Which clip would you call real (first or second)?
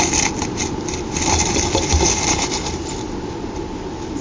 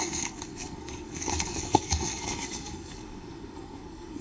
first